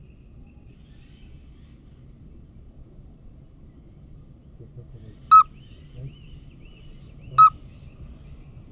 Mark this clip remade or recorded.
recorded